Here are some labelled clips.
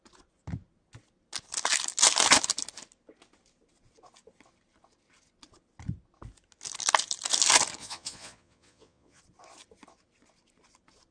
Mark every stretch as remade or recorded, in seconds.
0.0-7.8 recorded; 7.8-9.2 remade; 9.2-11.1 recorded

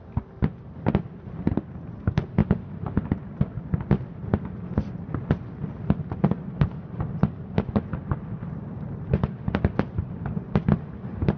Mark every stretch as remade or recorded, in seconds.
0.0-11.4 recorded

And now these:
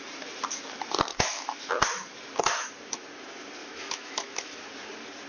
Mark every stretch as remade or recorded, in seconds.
0.0-1.1 recorded; 1.1-1.7 remade; 1.7-3.6 recorded; 3.6-4.8 remade; 4.8-5.3 recorded

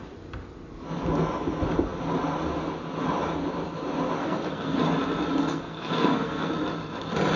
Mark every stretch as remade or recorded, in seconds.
0.0-4.2 recorded; 4.2-4.8 remade; 4.8-5.4 recorded; 5.4-6.5 remade; 6.5-7.4 recorded